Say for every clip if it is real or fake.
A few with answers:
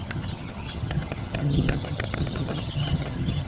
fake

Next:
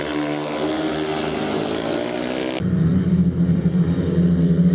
real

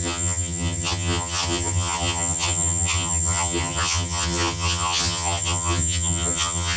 fake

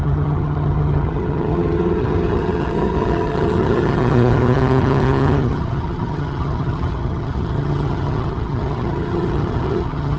fake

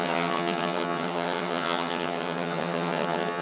fake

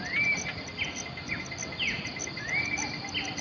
real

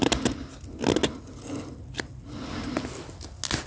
real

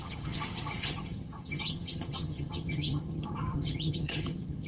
fake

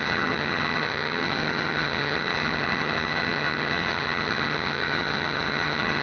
fake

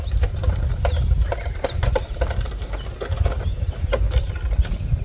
real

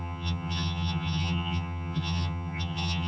fake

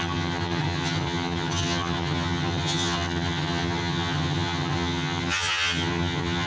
fake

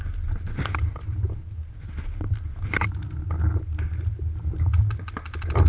real